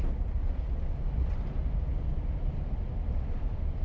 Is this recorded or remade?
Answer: recorded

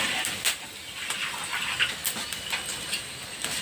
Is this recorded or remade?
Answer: recorded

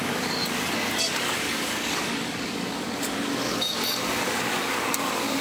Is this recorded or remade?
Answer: remade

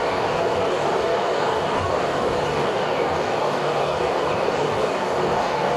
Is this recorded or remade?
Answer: remade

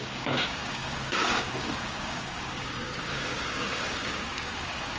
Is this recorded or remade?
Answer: remade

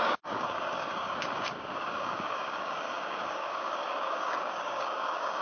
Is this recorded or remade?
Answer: remade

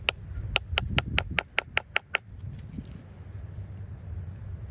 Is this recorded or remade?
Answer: recorded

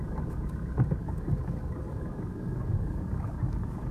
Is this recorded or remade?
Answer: remade